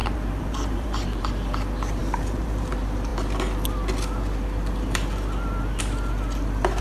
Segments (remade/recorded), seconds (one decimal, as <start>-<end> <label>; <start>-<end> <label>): 0.0-1.3 remade; 1.3-2.0 recorded; 2.0-2.7 remade; 2.7-6.8 recorded